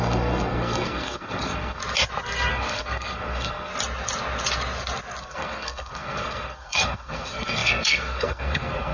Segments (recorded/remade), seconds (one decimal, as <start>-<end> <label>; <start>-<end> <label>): 0.0-1.8 remade; 1.8-2.5 recorded; 2.5-3.7 remade; 3.7-5.2 recorded; 5.2-8.9 remade